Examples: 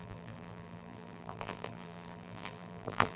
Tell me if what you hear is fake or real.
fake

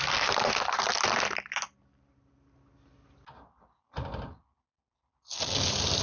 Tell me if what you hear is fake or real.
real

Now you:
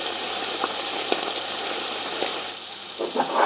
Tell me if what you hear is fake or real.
fake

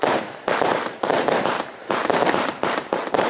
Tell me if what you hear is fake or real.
fake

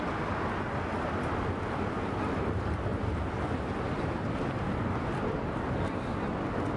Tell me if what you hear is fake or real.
real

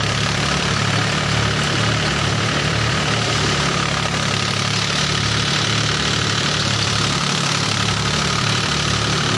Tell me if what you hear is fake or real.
fake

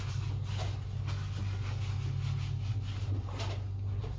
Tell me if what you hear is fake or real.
real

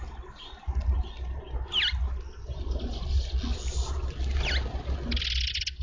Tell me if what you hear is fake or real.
real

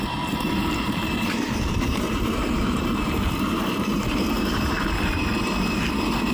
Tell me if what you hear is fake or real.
fake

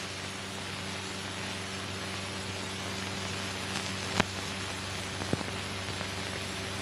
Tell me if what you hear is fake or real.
real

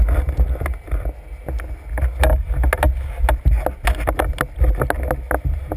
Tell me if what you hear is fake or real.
real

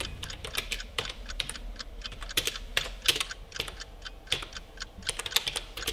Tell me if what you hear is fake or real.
fake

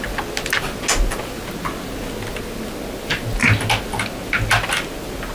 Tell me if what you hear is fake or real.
real